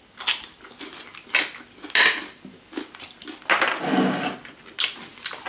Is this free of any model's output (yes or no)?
yes